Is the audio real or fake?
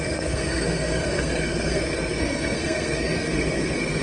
fake